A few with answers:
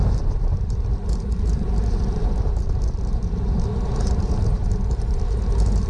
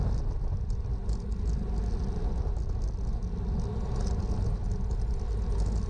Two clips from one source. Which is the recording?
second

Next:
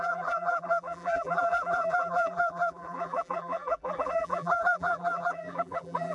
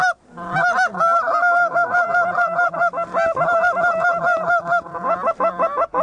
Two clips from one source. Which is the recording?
second